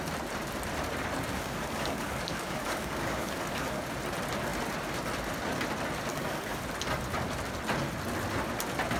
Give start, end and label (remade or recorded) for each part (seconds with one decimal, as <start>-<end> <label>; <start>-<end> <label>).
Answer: 0.0-1.3 recorded; 1.3-3.8 remade; 3.8-6.1 recorded; 6.1-6.6 remade; 6.6-9.0 recorded